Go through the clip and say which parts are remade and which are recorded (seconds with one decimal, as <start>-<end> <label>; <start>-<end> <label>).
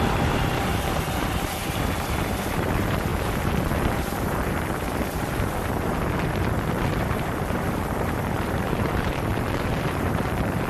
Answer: 0.0-10.7 remade